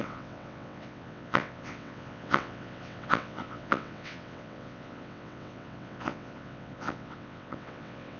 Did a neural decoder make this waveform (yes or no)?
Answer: yes